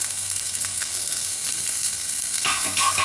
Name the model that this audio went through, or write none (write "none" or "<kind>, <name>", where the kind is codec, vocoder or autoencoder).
codec, SNAC